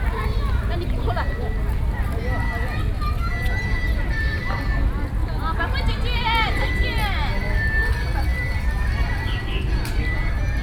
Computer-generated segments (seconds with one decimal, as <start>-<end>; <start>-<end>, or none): none